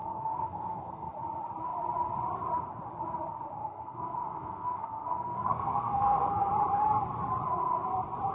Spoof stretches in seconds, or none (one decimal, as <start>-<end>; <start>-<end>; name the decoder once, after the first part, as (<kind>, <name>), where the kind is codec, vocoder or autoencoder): 0.0-1.1 (codec, SNAC); 3.6-6.5